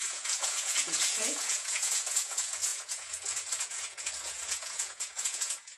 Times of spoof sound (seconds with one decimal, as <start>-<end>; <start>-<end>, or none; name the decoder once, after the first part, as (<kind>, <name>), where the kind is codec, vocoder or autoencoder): 0.0-5.8 (vocoder, Vocos)